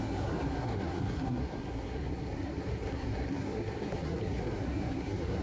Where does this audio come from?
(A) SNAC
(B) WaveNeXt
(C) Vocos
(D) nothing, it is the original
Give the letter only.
A